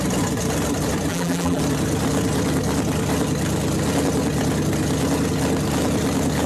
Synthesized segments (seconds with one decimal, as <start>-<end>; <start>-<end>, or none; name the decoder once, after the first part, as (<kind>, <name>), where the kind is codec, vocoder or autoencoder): 1.1-1.6 (vocoder, BigVGAN v2)